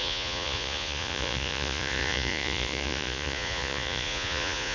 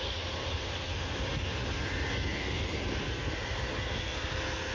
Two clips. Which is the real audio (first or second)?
second